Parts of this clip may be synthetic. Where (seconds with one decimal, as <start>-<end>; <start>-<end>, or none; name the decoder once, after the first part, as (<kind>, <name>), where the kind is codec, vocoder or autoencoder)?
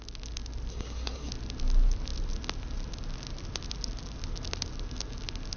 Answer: 0.7-1.3 (codec, SNAC)